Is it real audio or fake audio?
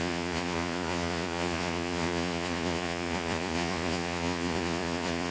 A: fake